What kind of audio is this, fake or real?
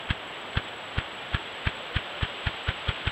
fake